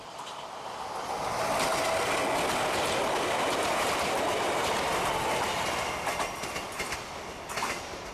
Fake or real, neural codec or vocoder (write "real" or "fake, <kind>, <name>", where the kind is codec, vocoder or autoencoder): real